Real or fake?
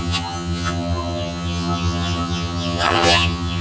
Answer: fake